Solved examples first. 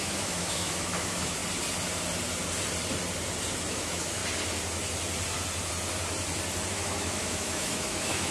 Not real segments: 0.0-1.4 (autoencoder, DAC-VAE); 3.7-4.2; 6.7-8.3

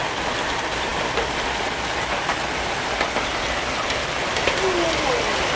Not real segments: none

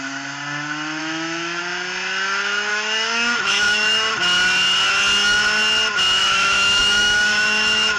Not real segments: 1.0-1.6 (autoencoder, DAC-VAE); 2.7-4.1; 6.2-8.0

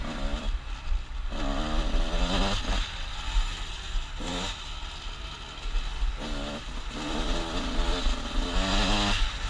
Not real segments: none

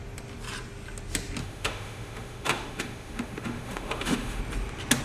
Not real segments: 1.4-4.4 (autoencoder, DAC-VAE)